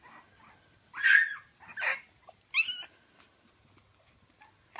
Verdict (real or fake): real